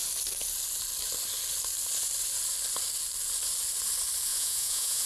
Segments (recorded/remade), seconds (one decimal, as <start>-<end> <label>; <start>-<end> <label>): 0.0-4.3 recorded; 4.3-5.1 remade